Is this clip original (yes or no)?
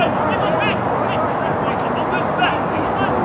yes